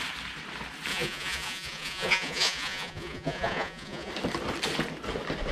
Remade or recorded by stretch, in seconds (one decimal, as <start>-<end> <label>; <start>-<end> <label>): 0.0-0.9 recorded; 0.9-4.1 remade; 4.1-5.5 recorded

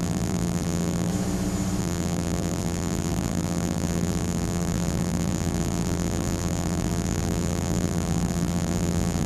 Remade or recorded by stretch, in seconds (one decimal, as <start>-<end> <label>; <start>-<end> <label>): 0.0-1.1 remade; 1.1-1.8 recorded; 1.8-9.3 remade

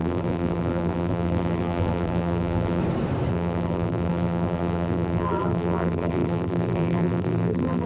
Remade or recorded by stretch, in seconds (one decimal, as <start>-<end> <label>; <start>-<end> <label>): 0.0-2.8 remade; 2.8-3.3 recorded; 3.3-7.9 remade